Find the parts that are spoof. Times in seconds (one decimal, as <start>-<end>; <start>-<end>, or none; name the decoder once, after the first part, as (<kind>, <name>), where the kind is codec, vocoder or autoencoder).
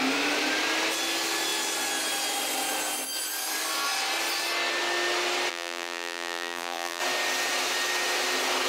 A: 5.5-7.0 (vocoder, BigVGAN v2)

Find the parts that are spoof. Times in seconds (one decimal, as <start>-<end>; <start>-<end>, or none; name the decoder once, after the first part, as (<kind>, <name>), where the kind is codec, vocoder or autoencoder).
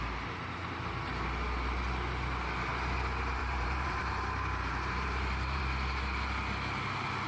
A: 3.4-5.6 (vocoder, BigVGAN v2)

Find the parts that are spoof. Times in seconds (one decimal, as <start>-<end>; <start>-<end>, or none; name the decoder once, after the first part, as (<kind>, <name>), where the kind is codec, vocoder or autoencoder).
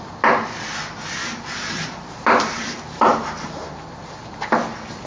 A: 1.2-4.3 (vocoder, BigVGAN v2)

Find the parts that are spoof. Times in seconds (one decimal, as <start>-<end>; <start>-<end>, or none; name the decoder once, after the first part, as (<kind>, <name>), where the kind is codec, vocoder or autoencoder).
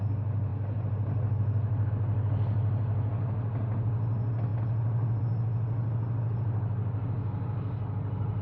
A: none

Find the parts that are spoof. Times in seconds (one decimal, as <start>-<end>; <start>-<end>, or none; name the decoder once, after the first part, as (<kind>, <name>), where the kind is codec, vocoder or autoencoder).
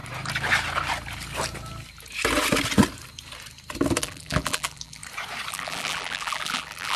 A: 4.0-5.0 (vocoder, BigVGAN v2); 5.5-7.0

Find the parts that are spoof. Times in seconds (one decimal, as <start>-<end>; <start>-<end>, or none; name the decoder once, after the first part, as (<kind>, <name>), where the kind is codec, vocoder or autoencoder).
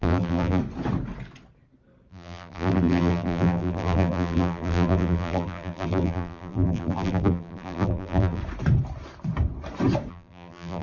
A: 0.0-0.6 (vocoder, BigVGAN v2); 2.1-8.4; 10.1-10.8